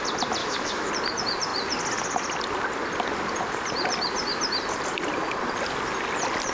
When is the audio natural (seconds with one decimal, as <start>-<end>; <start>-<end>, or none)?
0.0-0.4; 0.9-6.5